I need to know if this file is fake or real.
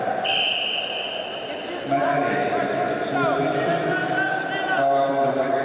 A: real